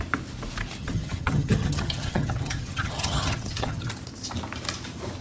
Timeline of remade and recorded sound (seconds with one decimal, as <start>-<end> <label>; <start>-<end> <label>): 0.0-0.8 recorded; 0.8-3.9 remade; 3.9-5.2 recorded